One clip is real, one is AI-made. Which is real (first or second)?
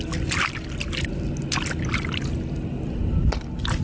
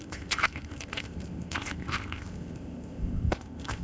first